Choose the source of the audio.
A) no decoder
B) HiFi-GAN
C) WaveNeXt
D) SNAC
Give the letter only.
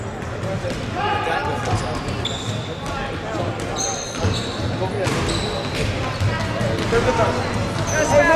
A